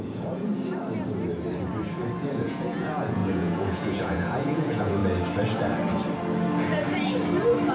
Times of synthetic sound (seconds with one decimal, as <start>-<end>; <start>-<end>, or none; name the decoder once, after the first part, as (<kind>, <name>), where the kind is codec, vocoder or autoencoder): 0.0-0.5 (vocoder, Vocos); 2.3-5.0